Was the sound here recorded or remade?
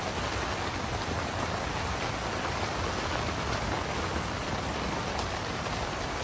recorded